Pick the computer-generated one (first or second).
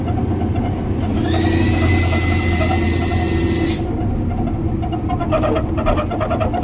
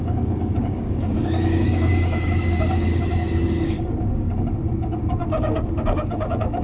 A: second